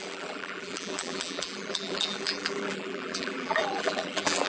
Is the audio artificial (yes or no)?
yes